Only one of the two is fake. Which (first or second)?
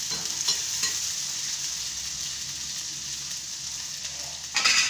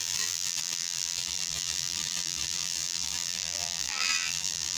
second